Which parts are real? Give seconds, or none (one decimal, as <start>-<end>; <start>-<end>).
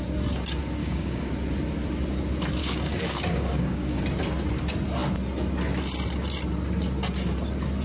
0.0-0.8; 1.3-2.6; 4.0-7.8